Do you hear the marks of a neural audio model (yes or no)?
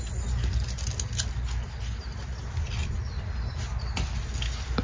no